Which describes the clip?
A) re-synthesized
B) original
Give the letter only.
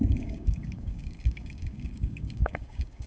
A